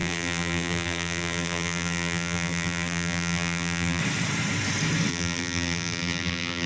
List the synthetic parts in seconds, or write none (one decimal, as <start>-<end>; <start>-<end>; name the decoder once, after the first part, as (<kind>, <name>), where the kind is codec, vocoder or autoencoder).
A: 0.0-4.0 (vocoder, BigVGAN v2); 5.1-6.7